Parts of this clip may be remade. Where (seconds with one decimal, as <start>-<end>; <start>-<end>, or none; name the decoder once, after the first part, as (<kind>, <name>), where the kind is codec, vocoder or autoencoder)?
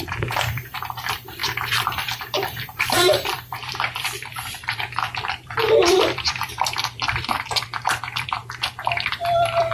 0.0-8.4 (vocoder, BigVGAN v2); 9.1-9.7